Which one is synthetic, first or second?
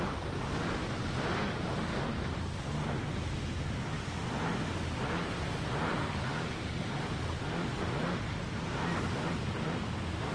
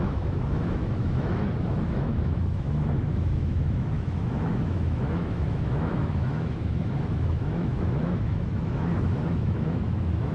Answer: second